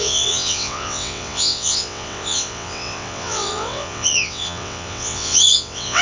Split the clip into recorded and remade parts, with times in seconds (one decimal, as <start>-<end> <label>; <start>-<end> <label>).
0.0-6.0 remade